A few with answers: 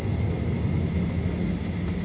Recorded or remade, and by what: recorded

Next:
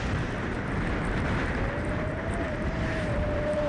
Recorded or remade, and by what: remade, vocoder, BigVGAN v2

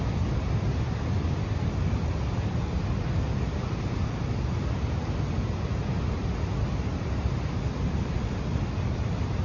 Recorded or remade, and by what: recorded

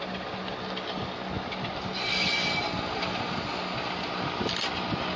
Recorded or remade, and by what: recorded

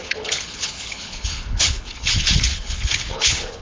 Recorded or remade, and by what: remade, codec, HILCodec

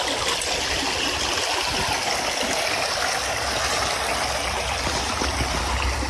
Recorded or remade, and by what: recorded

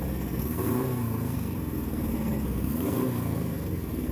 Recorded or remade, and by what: remade, codec, SNAC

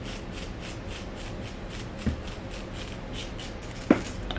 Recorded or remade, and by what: recorded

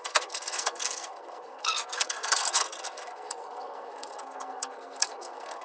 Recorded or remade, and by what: remade, codec, SNAC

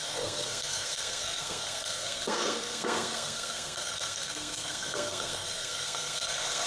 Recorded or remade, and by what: remade, codec, SNAC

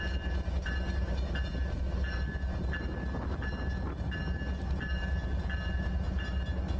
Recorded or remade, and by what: recorded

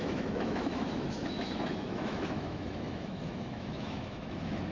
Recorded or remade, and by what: remade, autoencoder, DAC-VAE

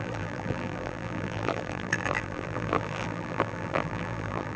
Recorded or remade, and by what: remade, vocoder, BigVGAN v2